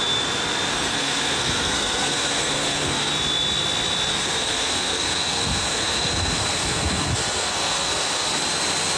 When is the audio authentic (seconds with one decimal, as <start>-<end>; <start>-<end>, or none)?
0.0-0.7; 3.1-4.1; 8.4-9.0